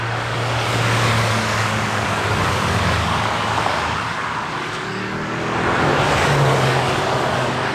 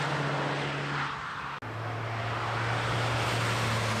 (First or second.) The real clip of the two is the second